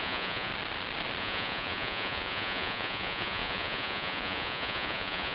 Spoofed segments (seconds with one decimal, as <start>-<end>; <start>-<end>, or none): 0.0-0.5; 1.2-5.3